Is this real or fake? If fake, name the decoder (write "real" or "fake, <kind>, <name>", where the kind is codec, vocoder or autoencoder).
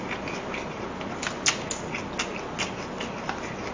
real